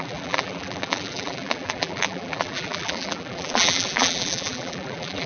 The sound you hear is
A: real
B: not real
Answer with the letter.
B